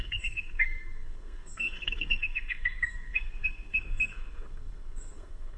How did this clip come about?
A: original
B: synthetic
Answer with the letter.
B